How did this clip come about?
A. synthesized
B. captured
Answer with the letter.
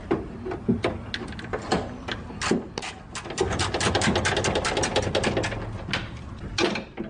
B